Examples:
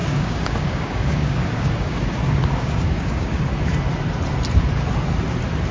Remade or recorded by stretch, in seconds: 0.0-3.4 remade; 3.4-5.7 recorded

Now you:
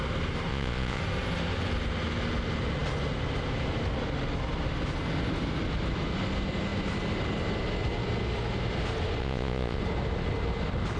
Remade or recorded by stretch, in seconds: 0.0-0.5 recorded; 0.5-1.0 remade; 1.0-9.2 recorded; 9.2-9.8 remade; 9.8-11.0 recorded

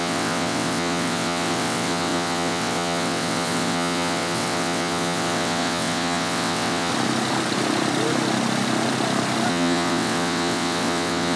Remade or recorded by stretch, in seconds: 0.0-6.9 remade; 6.9-9.5 recorded; 9.5-11.4 remade